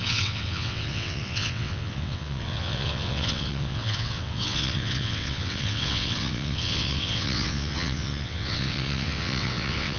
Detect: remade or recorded remade